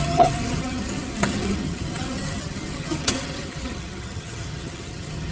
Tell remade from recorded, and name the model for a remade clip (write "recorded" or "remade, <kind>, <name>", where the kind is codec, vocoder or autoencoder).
remade, vocoder, HiFi-GAN